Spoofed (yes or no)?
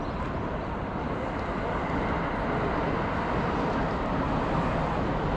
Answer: no